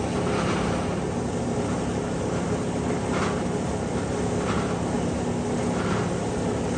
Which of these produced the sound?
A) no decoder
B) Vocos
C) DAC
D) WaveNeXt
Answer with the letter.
A